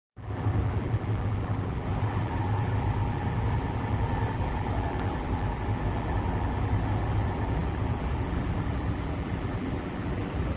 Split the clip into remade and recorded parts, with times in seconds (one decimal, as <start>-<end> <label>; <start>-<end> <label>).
0.0-10.6 remade